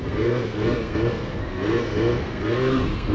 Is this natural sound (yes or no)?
no